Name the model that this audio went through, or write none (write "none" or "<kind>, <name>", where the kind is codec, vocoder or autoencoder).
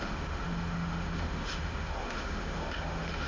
autoencoder, DAC-VAE